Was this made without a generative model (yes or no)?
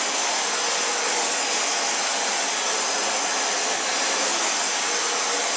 yes